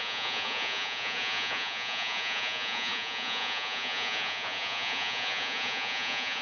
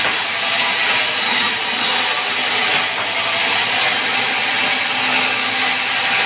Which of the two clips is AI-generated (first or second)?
first